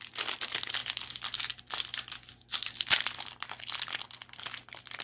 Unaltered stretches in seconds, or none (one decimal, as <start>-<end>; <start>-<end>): 0.0-5.0